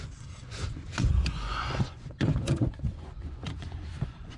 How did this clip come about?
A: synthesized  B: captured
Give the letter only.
A